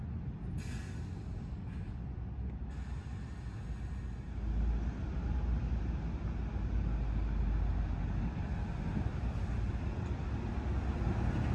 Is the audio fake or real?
real